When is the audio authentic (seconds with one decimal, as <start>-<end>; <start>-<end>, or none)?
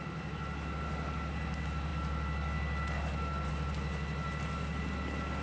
0.0-5.4